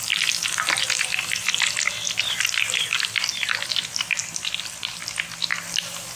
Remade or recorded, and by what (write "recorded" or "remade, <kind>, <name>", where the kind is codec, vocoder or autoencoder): recorded